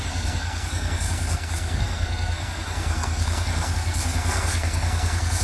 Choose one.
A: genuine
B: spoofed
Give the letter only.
B